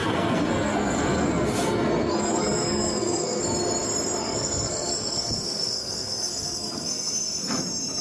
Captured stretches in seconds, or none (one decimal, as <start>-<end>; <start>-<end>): 3.4-4.2; 7.6-8.0